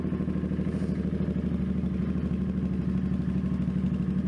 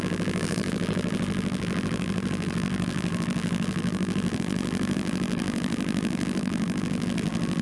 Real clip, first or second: first